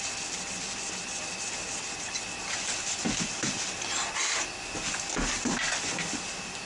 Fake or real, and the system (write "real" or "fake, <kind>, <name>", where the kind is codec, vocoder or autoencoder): real